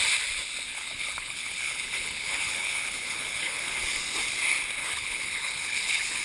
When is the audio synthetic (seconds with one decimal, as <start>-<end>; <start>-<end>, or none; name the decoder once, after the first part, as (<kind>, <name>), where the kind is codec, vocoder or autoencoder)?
0.7-3.8 (codec, HILCodec); 4.8-6.2